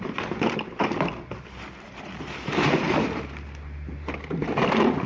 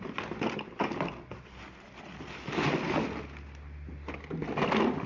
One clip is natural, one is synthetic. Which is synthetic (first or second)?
first